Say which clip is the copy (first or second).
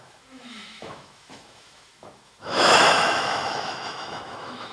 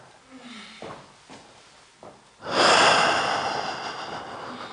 first